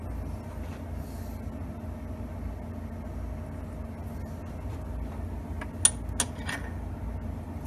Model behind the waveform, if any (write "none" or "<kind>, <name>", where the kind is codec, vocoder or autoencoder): none